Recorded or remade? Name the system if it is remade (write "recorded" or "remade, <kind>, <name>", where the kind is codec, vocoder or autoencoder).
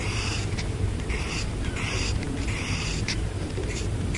remade, vocoder, BigVGAN v2